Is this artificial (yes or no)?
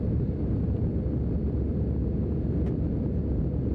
no